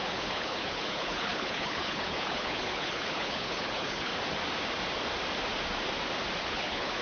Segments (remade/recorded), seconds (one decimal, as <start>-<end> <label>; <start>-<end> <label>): 0.0-4.1 remade; 4.1-6.4 recorded; 6.4-7.0 remade